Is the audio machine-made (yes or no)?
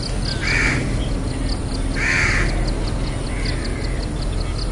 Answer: no